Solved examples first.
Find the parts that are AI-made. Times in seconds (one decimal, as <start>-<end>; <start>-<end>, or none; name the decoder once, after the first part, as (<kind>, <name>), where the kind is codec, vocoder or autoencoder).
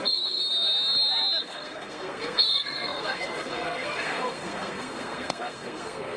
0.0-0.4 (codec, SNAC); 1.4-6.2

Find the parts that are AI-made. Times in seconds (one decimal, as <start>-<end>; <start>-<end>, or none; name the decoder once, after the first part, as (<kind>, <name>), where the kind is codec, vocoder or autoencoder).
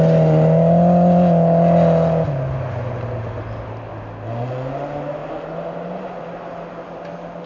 none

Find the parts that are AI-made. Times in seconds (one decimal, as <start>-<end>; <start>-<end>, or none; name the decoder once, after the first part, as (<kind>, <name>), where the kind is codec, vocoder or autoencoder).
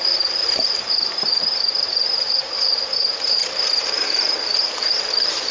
0.0-5.5 (vocoder, BigVGAN v2)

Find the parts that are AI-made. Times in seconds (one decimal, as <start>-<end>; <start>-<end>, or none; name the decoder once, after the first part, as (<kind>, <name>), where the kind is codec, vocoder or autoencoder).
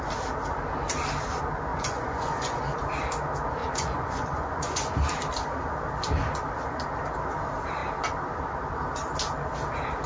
1.7-2.6 (vocoder, Vocos); 3.6-4.9